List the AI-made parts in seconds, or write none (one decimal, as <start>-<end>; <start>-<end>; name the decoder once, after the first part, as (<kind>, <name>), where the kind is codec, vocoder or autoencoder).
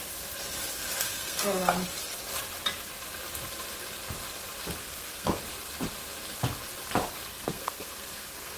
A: 1.0-1.6 (codec, SNAC); 4.8-5.4; 7.3-8.6